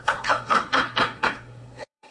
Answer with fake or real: fake